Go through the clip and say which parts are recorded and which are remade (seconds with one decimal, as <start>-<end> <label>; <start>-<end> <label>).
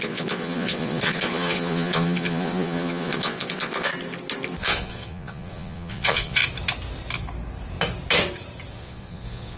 0.0-3.9 remade; 3.9-4.6 recorded; 4.6-6.4 remade; 6.4-8.7 recorded; 8.7-9.6 remade